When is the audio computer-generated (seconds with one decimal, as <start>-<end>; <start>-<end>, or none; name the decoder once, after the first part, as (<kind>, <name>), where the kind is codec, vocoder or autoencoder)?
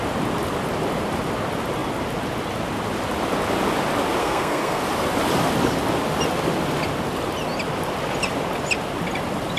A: 4.2-4.8 (codec, SNAC)